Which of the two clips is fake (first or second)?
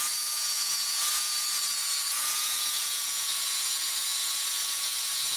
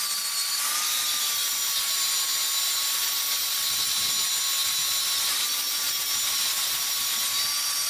first